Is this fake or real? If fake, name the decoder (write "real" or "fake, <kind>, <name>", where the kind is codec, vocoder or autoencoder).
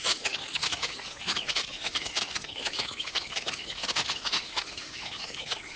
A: fake, autoencoder, DAC-VAE